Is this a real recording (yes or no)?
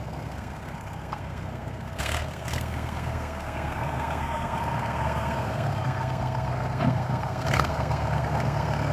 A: no